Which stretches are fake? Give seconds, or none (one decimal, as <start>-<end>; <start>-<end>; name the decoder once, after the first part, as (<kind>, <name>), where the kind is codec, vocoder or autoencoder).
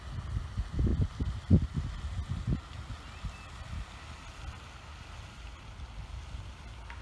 none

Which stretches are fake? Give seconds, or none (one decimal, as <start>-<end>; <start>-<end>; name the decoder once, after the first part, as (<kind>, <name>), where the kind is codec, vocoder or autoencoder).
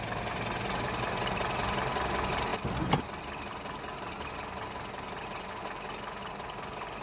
none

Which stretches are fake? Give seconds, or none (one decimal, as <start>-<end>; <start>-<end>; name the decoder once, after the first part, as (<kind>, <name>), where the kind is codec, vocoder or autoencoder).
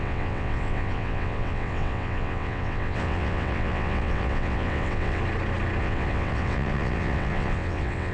0.0-5.2 (vocoder, WaveNeXt); 5.8-8.1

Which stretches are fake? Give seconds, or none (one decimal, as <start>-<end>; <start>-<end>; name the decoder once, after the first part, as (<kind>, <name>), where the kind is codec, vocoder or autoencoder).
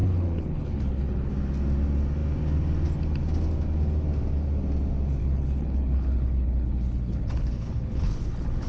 0.0-1.3 (codec, HILCodec); 5.2-8.7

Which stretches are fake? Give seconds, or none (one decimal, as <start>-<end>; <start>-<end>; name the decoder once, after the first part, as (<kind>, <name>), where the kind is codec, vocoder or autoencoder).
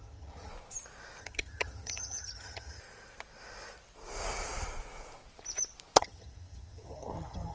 0.0-0.5 (vocoder, HiFi-GAN); 1.2-2.8; 6.0-7.5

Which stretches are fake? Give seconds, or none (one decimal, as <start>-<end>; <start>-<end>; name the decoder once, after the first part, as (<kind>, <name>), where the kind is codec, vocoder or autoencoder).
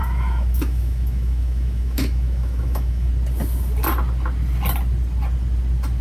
0.0-3.1 (autoencoder, DAC-VAE)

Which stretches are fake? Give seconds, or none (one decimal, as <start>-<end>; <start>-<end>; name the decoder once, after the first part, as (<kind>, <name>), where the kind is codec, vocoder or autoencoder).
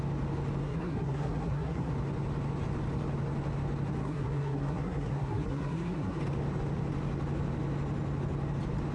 0.6-1.9 (codec, SNAC); 4.0-6.2